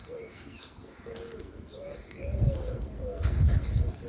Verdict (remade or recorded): remade